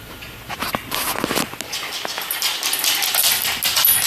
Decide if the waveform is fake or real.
real